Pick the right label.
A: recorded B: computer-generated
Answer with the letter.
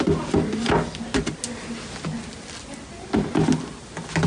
A